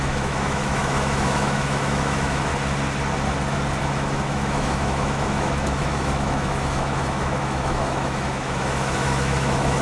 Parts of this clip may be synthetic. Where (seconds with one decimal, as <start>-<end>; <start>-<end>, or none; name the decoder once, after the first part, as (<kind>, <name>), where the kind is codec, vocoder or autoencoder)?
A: 0.0-2.5 (autoencoder, DAC-VAE); 3.8-9.8